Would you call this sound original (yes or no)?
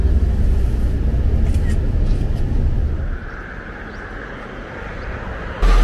yes